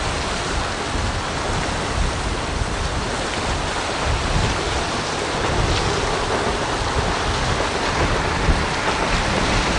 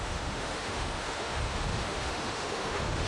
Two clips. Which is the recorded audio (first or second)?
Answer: first